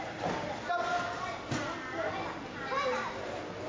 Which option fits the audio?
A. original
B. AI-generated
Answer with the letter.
A